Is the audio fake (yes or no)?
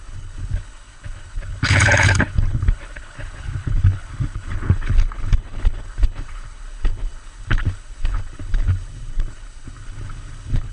yes